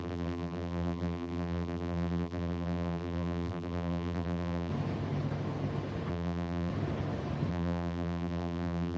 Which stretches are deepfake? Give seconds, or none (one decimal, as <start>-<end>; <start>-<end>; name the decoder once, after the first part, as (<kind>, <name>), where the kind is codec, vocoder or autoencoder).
0.0-4.7 (vocoder, BigVGAN v2); 6.1-6.7; 7.5-9.0

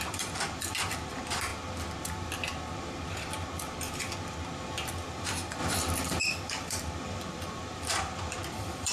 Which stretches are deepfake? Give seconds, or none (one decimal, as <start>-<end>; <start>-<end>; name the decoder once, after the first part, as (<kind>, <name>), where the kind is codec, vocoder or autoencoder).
0.0-1.5 (vocoder, BigVGAN v2); 5.1-5.6; 6.2-8.9

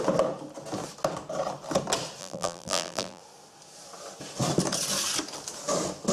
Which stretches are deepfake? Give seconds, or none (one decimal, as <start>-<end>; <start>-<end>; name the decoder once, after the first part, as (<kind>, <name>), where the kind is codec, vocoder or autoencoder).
2.2-3.2 (vocoder, BigVGAN v2)

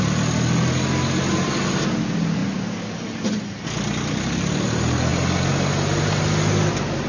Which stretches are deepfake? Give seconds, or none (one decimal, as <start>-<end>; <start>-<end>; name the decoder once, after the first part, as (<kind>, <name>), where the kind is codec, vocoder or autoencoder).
none